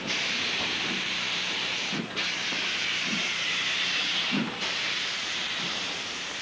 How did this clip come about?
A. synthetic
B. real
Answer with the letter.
A